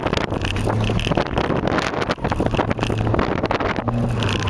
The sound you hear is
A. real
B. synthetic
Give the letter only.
A